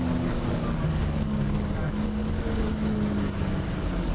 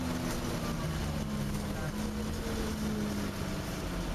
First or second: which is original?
second